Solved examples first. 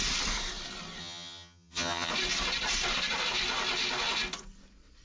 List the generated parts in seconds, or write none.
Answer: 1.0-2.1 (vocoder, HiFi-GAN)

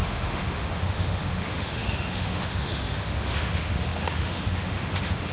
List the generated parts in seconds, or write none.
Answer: 0.0-5.3 (autoencoder, DAC-VAE)